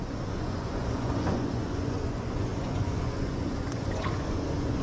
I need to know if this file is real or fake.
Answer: fake